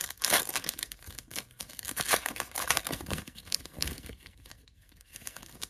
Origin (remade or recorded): remade